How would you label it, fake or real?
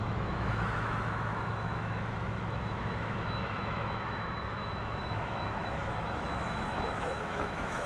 fake